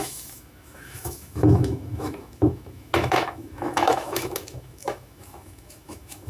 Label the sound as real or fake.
fake